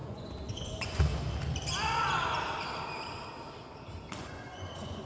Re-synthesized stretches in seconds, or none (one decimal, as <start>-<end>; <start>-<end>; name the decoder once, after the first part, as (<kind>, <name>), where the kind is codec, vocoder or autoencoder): 0.0-1.1 (vocoder, Vocos); 4.2-5.1